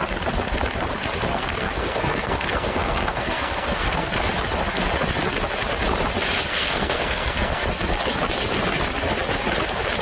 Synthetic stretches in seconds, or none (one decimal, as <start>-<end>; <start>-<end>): 1.3-4.1; 6.5-7.7